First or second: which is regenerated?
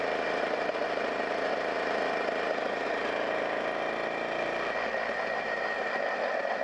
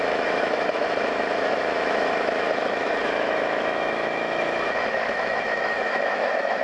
second